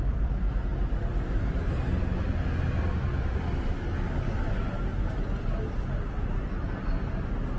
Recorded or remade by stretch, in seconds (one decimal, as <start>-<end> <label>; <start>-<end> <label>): 0.0-7.6 recorded